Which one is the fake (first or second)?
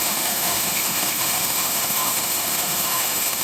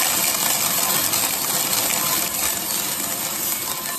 first